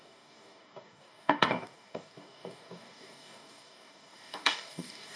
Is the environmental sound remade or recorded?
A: remade